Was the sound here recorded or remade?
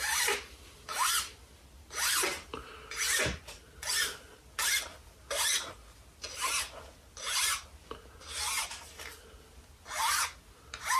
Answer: recorded